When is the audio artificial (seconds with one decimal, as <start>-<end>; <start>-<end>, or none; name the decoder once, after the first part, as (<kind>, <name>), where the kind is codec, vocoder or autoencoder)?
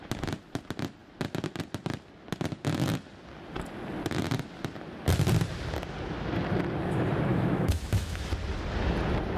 7.3-8.3 (autoencoder, DAC-VAE)